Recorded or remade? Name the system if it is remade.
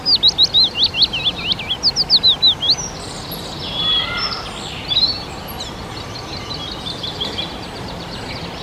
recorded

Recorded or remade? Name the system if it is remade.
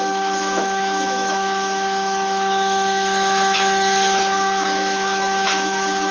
remade, autoencoder, DAC-VAE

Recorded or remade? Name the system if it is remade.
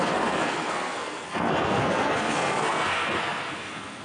remade, codec, SNAC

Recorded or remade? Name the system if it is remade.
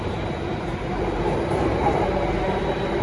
remade, vocoder, BigVGAN v2